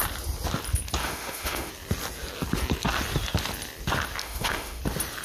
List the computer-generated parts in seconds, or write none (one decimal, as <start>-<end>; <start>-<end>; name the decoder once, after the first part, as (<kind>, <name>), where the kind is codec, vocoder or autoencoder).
1.0-1.7 (autoencoder, DAC-VAE); 4.2-4.8